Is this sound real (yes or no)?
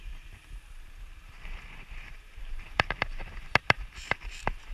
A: no